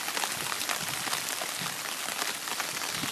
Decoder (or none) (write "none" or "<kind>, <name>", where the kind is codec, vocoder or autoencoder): none